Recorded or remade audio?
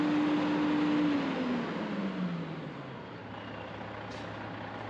recorded